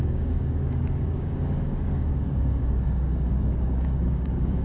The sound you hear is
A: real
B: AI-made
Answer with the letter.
B